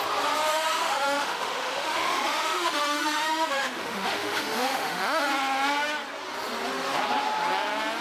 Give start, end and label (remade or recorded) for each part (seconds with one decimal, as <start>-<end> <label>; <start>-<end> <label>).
0.0-0.5 recorded; 0.5-5.3 remade; 5.3-8.0 recorded